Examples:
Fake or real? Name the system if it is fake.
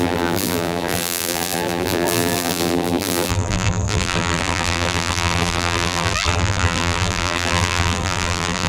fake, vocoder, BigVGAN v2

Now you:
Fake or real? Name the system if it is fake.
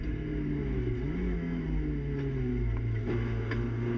real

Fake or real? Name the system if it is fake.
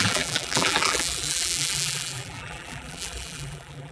fake, vocoder, BigVGAN v2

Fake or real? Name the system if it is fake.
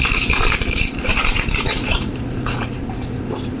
fake, vocoder, BigVGAN v2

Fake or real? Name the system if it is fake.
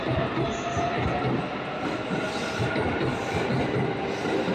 real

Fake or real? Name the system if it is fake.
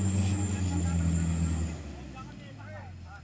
real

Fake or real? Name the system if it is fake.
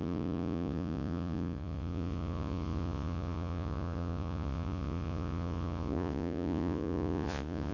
fake, vocoder, Vocos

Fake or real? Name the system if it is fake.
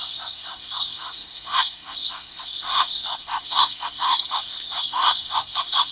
fake, codec, SNAC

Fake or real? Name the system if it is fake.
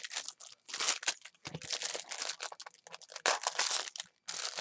real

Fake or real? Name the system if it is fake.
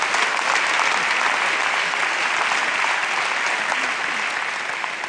real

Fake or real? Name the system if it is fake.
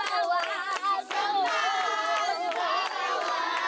real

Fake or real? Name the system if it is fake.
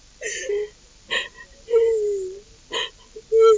real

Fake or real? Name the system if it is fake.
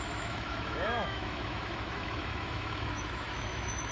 fake, autoencoder, DAC-VAE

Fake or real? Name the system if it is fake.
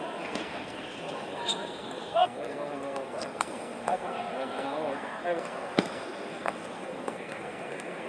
fake, codec, SNAC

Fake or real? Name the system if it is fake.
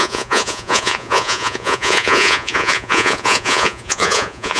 fake, vocoder, Vocos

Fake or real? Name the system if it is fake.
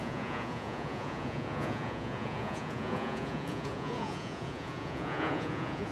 fake, vocoder, Vocos